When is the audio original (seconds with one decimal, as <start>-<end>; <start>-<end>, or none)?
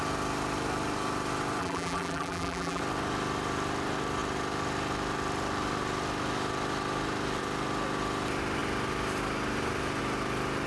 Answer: 0.0-1.6; 2.8-10.7